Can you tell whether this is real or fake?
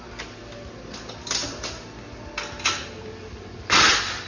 real